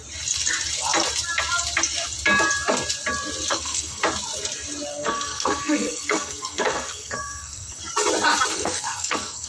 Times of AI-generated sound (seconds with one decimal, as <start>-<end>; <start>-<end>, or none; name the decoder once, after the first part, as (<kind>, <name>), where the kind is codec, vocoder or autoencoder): 3.5-4.0 (codec, SNAC); 4.9-7.8; 8.5-9.5